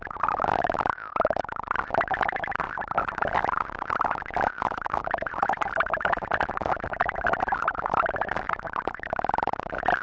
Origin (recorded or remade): remade